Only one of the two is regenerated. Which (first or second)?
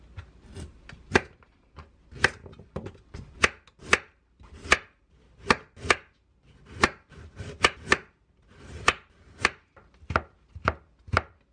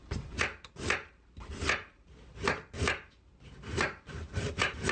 second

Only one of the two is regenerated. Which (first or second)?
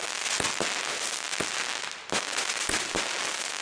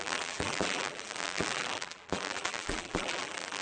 second